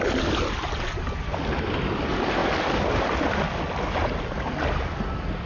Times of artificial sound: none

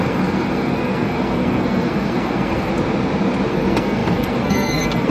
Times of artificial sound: 0.0-2.7 (codec, SNAC); 3.5-5.1

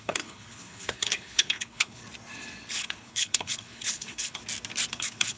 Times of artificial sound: 0.0-2.0 (codec, HILCodec); 2.7-4.4; 4.9-5.4

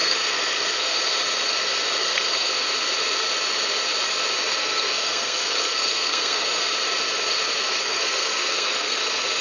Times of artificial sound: 0.0-1.0 (codec, SNAC); 2.0-2.5; 4.6-6.6; 7.8-9.0

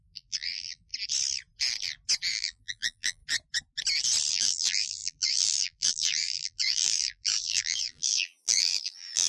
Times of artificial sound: 0.0-0.9 (vocoder, BigVGAN v2); 2.3-3.2; 4.3-9.3

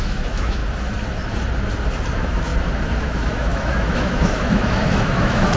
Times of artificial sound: 0.0-0.6 (autoencoder, DAC-VAE); 2.1-2.5; 3.0-5.6

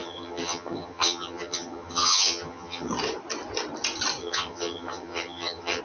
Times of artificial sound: 0.0-2.9 (vocoder, HiFi-GAN); 4.2-5.8